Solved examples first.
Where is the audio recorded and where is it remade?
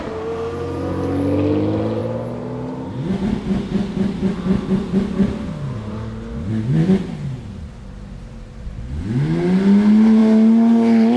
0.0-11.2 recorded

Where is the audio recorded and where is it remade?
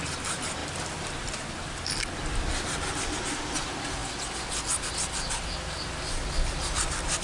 0.0-7.2 recorded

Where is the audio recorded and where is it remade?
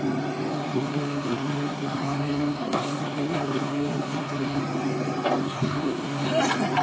0.0-0.5 recorded; 0.5-4.6 remade; 4.6-5.4 recorded; 5.4-6.3 remade; 6.3-6.8 recorded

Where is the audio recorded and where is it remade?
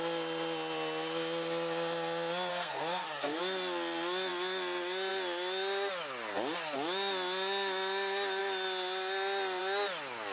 0.0-2.5 recorded; 2.5-3.4 remade; 3.4-10.3 recorded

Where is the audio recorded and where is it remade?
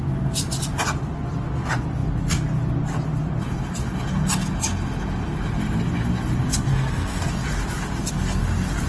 0.0-6.7 recorded; 6.7-7.3 remade; 7.3-8.9 recorded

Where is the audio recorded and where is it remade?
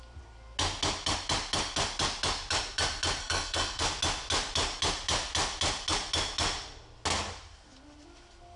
0.0-3.2 recorded; 3.2-3.8 remade; 3.8-8.6 recorded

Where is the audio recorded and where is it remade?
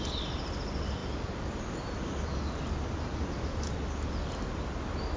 0.0-5.2 recorded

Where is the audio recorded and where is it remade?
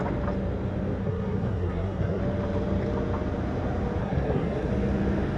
0.0-1.0 recorded; 1.0-2.2 remade; 2.2-4.0 recorded; 4.0-4.7 remade; 4.7-5.4 recorded